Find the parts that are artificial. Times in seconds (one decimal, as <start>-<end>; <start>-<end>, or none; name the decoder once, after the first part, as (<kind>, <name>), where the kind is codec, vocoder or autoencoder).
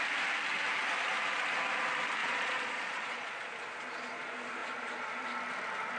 2.2-3.5 (vocoder, Vocos)